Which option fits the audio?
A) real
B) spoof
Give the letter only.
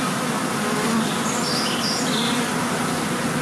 A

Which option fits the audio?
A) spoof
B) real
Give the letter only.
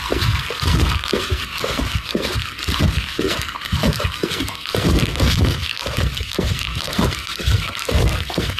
A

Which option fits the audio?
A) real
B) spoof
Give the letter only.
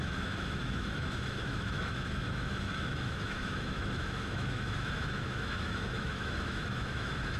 B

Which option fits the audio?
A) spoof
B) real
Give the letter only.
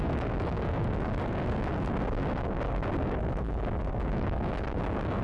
A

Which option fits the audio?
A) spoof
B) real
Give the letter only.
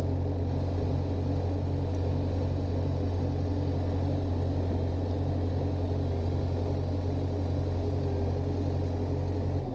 B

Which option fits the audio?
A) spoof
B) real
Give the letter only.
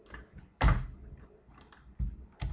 B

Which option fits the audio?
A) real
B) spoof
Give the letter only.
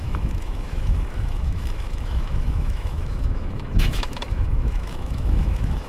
B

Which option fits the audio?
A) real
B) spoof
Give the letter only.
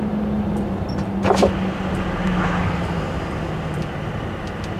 A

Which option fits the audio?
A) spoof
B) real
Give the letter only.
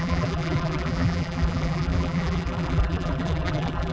A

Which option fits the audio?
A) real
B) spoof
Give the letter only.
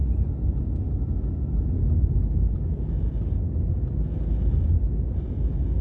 A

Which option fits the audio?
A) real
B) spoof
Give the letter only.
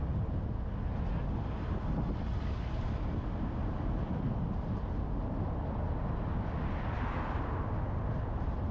A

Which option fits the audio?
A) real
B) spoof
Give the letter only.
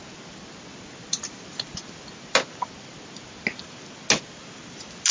A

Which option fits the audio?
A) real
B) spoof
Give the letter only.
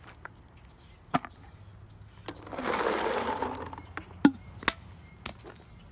A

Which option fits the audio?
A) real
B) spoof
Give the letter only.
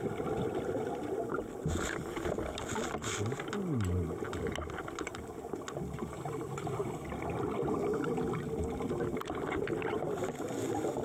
A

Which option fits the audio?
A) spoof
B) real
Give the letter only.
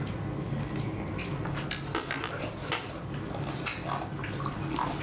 B